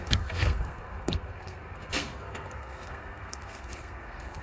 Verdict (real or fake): fake